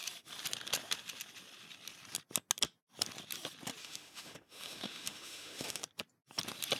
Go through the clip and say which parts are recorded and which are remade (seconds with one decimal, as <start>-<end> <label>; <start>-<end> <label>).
0.0-3.8 recorded; 3.8-5.8 remade; 5.8-6.8 recorded